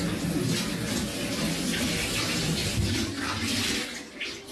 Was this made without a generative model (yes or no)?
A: yes